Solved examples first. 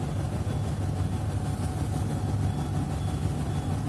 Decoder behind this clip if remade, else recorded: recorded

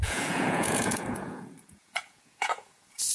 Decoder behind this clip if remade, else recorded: remade, vocoder, Vocos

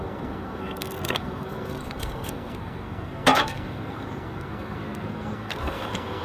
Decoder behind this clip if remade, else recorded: remade, codec, SNAC